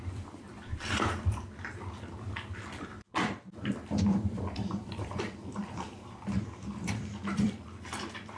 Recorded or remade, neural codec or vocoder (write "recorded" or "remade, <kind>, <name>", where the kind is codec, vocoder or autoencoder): remade, vocoder, BigVGAN v2